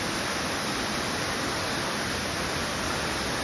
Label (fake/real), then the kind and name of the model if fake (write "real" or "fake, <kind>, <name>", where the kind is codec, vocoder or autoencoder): real